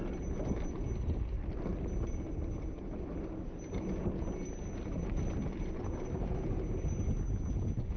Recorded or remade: recorded